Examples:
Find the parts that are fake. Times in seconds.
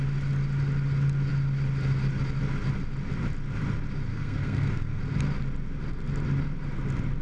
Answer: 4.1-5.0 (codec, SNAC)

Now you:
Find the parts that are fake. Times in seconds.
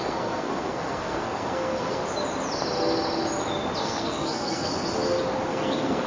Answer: 0.0-2.0 (codec, SNAC); 3.8-4.7; 5.5-6.1